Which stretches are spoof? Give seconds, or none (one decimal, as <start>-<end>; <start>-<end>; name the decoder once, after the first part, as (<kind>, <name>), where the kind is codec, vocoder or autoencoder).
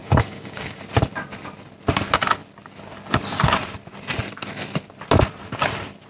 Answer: 0.0-0.8 (codec, DAC)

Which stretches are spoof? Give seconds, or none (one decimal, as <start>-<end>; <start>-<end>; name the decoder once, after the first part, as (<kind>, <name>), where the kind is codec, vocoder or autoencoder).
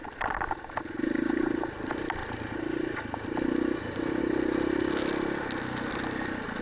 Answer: none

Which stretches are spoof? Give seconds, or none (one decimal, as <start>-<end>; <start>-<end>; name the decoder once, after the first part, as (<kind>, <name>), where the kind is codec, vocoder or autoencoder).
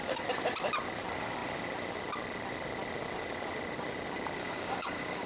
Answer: 4.4-5.3 (codec, DAC)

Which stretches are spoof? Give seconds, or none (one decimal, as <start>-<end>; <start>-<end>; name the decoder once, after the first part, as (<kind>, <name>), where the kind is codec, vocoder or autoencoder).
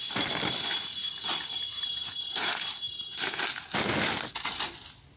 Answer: none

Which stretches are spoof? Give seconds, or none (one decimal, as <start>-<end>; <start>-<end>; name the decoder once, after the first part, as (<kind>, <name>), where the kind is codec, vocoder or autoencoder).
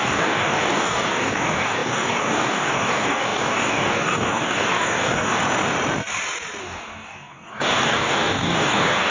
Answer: 0.0-5.4 (codec, DAC); 6.6-9.1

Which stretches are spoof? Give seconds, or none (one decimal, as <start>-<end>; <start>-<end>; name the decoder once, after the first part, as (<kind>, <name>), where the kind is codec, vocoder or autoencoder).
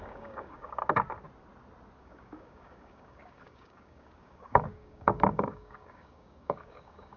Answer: 0.0-0.8 (codec, DAC); 2.0-7.2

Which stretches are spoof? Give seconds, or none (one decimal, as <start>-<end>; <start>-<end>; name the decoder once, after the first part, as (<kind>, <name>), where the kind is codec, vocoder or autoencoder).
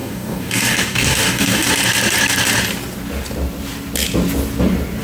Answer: 0.0-1.7 (codec, DAC)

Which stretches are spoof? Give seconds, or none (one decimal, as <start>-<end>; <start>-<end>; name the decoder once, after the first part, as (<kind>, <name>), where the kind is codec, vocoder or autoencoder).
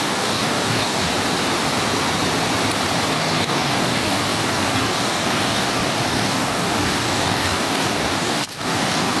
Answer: 0.0-1.1 (codec, DAC); 3.1-9.2